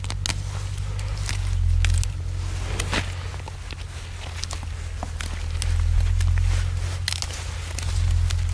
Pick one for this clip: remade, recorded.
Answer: recorded